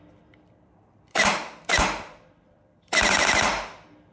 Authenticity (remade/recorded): remade